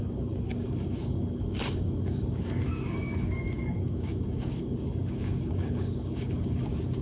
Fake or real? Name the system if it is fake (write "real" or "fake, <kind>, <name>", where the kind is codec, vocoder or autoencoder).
fake, codec, DAC